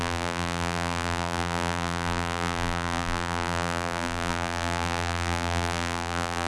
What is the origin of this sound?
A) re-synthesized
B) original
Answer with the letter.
A